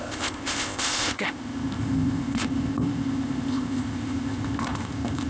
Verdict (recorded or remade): remade